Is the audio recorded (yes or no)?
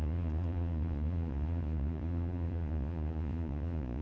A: no